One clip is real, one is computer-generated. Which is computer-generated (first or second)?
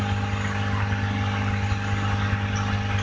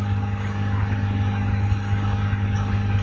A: second